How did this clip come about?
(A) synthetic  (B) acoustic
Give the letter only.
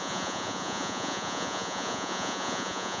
A